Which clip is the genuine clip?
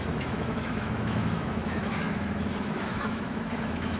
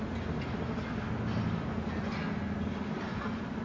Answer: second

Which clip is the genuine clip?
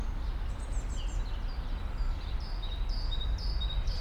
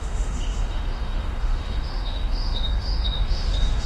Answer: first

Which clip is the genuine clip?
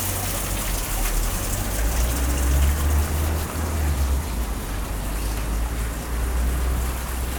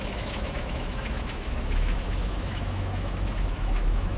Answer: first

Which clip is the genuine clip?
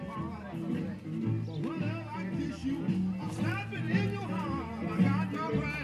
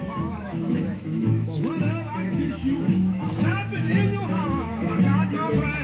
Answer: first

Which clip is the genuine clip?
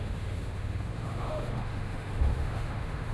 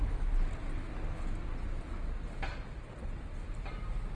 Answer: second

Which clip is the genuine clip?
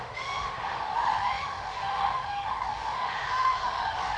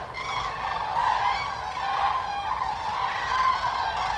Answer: second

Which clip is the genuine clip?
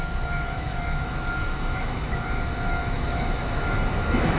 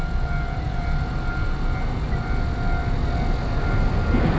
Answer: second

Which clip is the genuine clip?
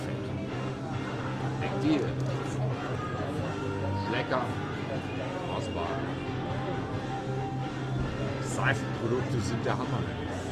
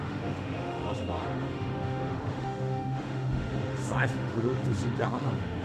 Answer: first